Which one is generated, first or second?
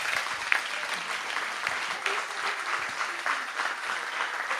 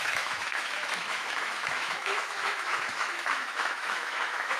second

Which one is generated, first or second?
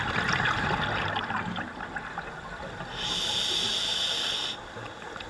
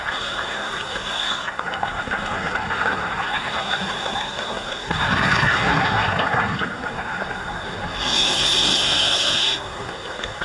second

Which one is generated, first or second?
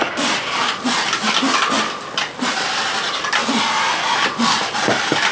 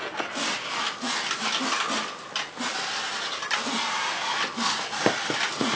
first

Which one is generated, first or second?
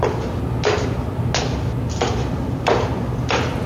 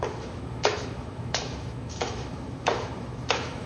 second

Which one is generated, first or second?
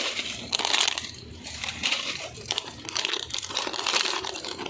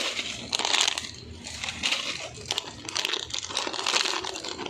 first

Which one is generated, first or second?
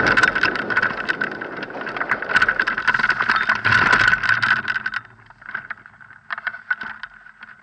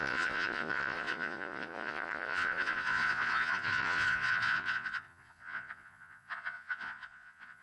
second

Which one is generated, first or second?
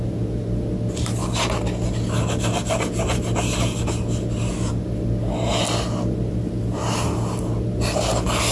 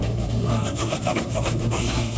second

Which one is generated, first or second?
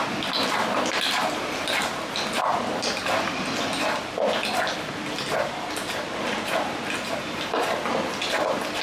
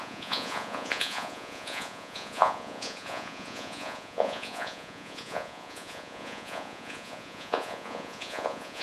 second